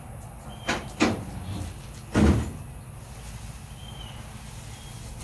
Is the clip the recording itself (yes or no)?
yes